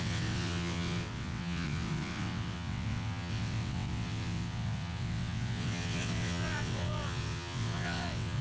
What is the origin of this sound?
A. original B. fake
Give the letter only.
B